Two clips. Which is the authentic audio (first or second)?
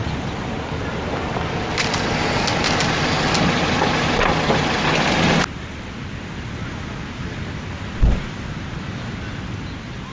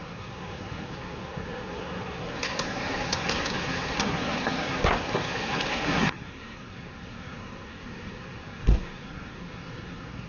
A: first